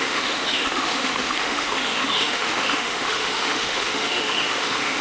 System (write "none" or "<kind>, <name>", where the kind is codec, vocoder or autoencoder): autoencoder, DAC-VAE